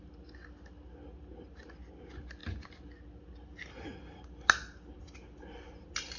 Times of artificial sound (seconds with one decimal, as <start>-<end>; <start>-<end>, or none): none